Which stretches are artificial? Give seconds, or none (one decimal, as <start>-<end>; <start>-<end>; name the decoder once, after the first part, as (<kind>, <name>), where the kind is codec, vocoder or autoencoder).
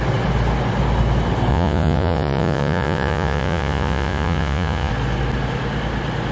1.5-4.9 (vocoder, Vocos)